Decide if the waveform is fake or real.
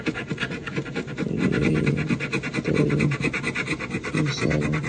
real